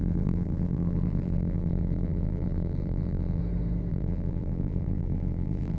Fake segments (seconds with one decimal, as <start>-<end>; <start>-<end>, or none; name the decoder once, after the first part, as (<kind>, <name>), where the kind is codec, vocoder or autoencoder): 0.0-3.4 (vocoder, BigVGAN v2); 3.9-5.8